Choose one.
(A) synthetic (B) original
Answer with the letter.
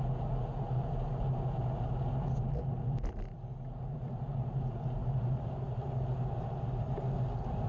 B